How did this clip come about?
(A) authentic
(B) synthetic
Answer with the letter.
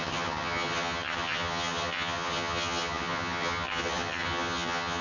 B